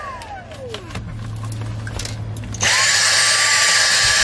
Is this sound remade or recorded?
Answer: recorded